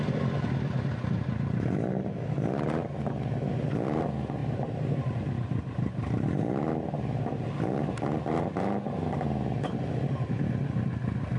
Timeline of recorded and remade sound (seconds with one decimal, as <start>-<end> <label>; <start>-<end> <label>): 0.0-4.4 recorded; 4.4-5.6 remade; 5.6-11.4 recorded